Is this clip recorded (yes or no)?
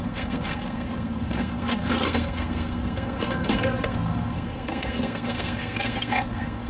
no